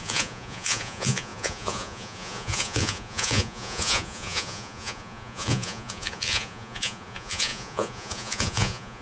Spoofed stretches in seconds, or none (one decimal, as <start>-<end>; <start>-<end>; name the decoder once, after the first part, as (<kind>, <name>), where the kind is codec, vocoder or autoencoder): 0.0-9.0 (vocoder, Vocos)